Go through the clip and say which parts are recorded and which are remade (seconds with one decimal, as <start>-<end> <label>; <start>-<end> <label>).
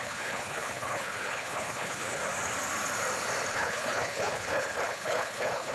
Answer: 0.0-2.2 remade; 2.2-3.5 recorded; 3.5-5.7 remade